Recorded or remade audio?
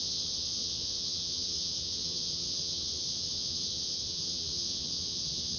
remade